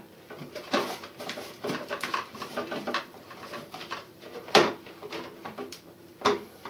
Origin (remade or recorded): remade